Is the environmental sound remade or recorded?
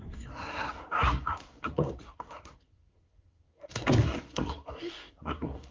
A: remade